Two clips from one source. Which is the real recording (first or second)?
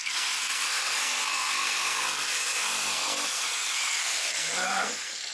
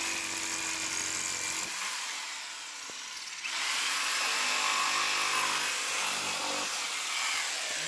second